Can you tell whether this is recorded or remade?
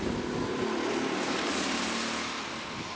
recorded